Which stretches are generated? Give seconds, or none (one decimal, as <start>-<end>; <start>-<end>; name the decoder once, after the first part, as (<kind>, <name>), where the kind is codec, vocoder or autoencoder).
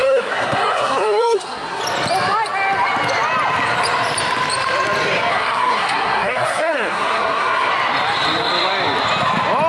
0.0-1.8 (codec, SNAC); 5.3-7.7